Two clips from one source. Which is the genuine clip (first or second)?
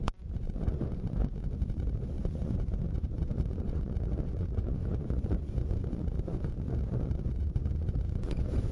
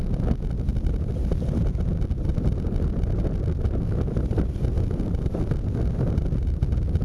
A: second